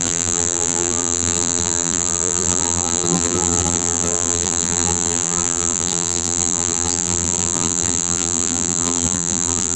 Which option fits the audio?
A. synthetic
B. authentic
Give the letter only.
A